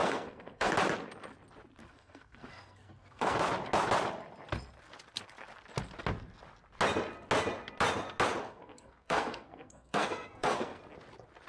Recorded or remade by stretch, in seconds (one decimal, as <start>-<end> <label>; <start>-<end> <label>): 0.0-0.7 remade; 0.7-1.8 recorded; 1.8-3.4 remade; 3.4-8.4 recorded; 8.4-10.8 remade; 10.8-11.5 recorded